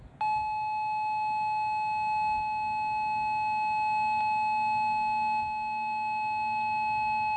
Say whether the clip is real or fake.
real